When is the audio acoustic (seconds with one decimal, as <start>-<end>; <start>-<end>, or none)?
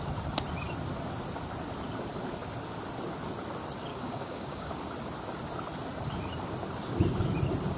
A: 0.0-3.9; 4.7-7.8